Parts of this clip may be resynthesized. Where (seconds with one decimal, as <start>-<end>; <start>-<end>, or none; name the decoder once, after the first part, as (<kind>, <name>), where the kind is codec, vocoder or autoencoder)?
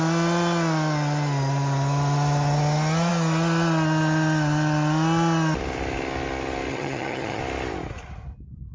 6.7-7.4 (vocoder, HiFi-GAN)